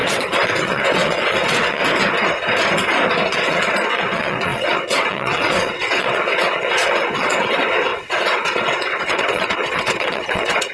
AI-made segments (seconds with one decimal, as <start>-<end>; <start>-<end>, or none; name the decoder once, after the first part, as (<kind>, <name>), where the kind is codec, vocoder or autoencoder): 0.0-1.8 (vocoder, WaveNeXt); 3.3-10.7